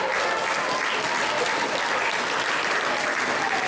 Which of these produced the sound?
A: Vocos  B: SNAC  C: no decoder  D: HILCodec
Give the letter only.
C